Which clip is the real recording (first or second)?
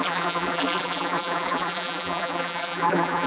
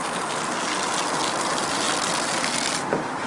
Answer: second